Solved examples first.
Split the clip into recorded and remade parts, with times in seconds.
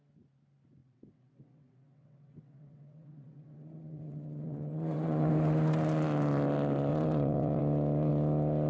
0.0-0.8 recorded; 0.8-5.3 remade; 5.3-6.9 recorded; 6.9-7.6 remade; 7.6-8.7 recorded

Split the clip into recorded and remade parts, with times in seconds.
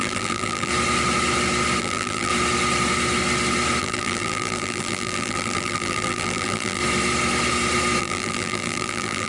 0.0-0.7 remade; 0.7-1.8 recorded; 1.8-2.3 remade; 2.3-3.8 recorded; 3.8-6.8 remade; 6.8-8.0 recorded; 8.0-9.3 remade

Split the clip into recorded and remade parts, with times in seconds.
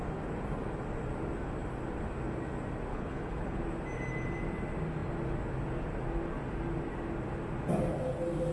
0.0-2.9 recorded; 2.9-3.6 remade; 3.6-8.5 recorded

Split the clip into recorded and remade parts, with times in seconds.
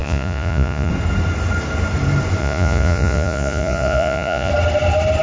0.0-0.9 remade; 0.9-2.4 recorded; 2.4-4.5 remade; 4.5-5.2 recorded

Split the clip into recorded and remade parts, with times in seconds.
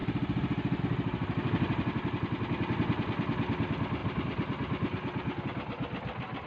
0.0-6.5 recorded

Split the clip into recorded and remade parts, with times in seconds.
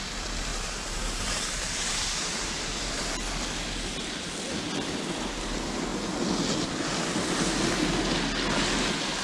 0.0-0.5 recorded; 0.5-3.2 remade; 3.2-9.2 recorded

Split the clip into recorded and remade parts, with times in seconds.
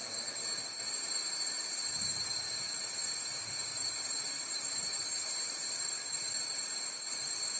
0.0-3.7 recorded; 3.7-5.8 remade; 5.8-7.6 recorded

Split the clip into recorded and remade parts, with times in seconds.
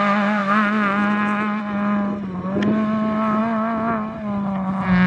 0.0-5.1 recorded